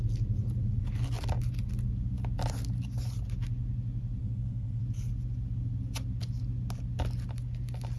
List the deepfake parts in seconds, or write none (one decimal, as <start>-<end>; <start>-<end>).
4.2-4.8